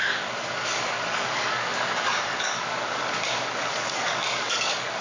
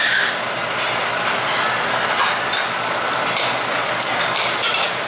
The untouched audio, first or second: second